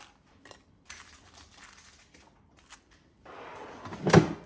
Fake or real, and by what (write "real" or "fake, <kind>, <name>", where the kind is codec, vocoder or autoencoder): real